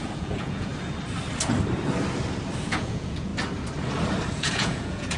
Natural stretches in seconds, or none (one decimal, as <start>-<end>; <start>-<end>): 0.7-2.6; 3.3-4.3